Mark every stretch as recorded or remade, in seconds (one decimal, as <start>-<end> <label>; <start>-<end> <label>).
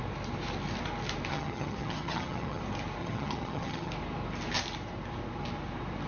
0.0-1.3 recorded; 1.3-2.6 remade; 2.6-3.0 recorded; 3.0-3.9 remade; 3.9-6.1 recorded